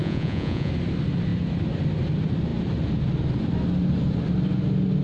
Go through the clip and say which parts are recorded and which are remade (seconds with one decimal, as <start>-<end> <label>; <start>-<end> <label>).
0.0-0.7 remade; 0.7-5.0 recorded